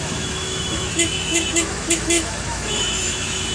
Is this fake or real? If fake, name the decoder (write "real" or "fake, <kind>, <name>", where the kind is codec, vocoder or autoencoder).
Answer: fake, autoencoder, DAC-VAE